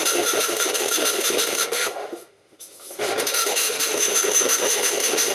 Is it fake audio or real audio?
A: fake